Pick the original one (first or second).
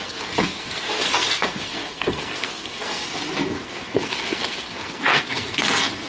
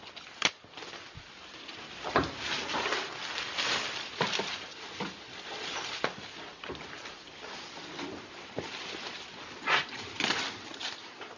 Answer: second